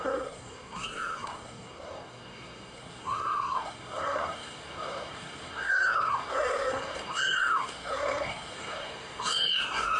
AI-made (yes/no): yes